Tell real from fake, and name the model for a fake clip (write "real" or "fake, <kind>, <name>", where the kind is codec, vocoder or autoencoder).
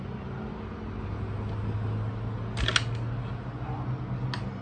real